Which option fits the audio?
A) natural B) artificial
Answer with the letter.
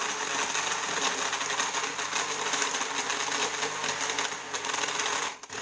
A